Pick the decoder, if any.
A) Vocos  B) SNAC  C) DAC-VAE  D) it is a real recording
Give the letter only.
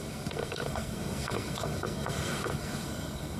B